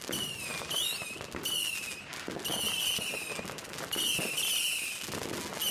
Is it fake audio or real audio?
real